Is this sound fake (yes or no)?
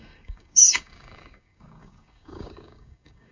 yes